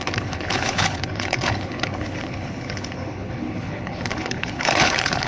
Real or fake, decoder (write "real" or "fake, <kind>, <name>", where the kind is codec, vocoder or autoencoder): fake, codec, HILCodec